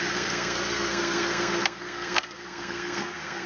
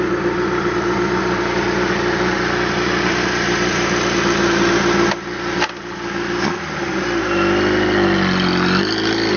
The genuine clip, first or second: second